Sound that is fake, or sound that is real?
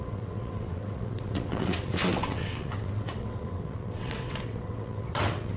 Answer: fake